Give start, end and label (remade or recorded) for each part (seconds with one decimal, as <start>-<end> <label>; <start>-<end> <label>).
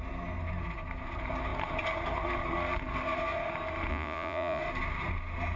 0.0-3.9 recorded; 3.9-4.6 remade; 4.6-5.6 recorded